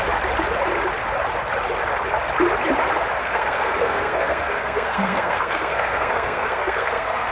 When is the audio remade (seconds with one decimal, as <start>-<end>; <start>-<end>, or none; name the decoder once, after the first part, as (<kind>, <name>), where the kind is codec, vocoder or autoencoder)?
3.2-7.3 (codec, SNAC)

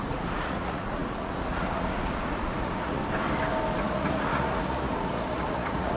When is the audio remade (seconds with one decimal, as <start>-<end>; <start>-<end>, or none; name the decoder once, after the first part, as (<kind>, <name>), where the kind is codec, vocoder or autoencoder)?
0.0-3.0 (vocoder, Vocos); 3.8-6.0

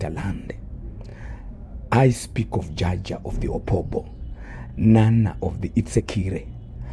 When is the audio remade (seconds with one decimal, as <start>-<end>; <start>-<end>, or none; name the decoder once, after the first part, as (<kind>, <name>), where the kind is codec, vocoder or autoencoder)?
0.0-1.1 (vocoder, Vocos); 3.3-4.7; 6.0-6.9

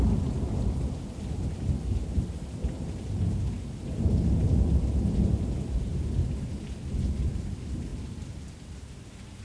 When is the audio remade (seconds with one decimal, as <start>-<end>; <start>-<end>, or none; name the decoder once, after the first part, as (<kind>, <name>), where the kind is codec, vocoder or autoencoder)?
none

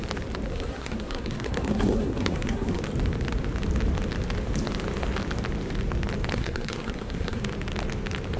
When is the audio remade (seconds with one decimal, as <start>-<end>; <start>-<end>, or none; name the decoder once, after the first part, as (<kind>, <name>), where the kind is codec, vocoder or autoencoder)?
0.5-2.8 (codec, SNAC); 6.3-7.4

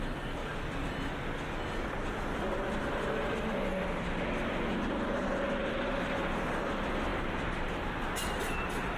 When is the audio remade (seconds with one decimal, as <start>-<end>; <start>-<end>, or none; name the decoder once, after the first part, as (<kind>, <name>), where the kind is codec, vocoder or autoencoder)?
0.0-0.4 (vocoder, BigVGAN v2); 2.8-3.7; 4.8-9.0

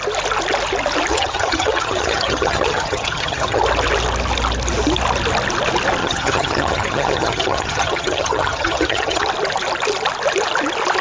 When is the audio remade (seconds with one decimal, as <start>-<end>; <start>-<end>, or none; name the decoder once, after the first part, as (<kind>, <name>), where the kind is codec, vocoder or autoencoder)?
1.1-3.6 (vocoder, HiFi-GAN); 6.0-9.3